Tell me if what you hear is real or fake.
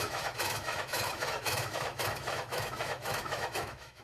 fake